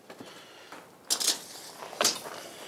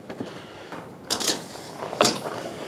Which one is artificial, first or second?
second